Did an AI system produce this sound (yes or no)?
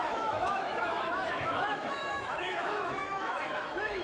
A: yes